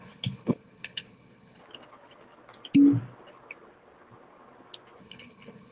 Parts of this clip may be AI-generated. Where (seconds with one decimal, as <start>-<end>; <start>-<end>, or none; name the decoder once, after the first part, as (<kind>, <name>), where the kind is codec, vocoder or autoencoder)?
0.0-1.6 (codec, HILCodec); 5.0-5.7